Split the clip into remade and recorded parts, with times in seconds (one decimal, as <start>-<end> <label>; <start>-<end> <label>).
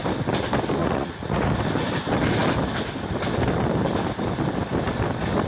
0.0-0.8 recorded; 0.8-1.5 remade; 1.5-5.5 recorded